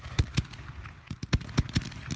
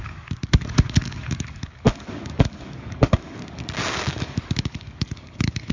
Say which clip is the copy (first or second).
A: second